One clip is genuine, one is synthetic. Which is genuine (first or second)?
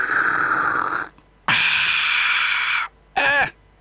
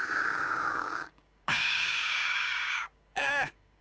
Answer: first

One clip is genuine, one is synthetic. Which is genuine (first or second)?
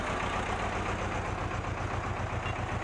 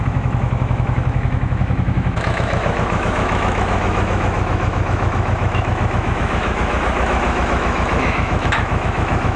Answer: first